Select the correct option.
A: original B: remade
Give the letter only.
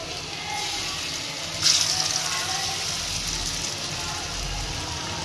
A